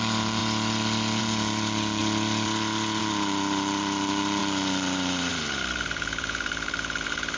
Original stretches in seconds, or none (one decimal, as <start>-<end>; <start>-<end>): 0.4-1.2; 2.0-3.0